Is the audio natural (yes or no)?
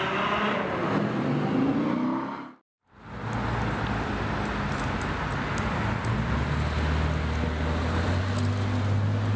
yes